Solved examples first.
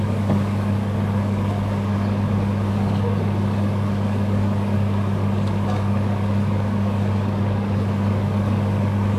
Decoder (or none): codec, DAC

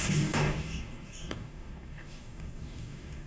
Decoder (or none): codec, DAC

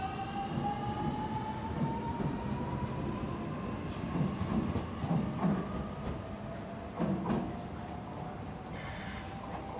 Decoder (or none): none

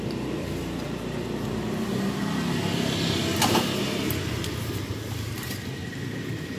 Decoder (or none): none